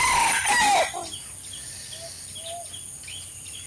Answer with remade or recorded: recorded